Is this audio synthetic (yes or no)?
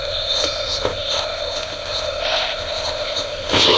yes